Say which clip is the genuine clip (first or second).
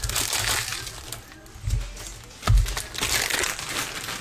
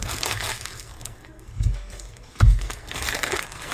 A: first